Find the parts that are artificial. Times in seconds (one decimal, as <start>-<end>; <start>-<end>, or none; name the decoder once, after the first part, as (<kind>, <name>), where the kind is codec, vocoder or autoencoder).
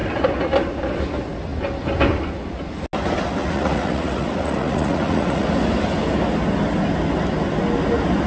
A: 3.4-5.5 (vocoder, Vocos)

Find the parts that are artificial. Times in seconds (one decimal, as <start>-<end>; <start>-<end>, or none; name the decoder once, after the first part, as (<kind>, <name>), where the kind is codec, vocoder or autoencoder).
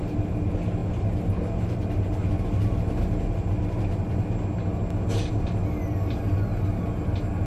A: none